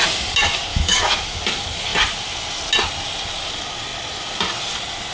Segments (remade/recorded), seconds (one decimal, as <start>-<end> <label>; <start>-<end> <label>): 0.0-0.7 recorded; 0.7-1.4 remade; 1.4-5.1 recorded